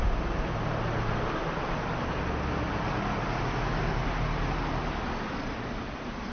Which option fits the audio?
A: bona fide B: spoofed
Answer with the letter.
A